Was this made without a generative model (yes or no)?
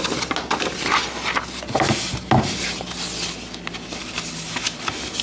yes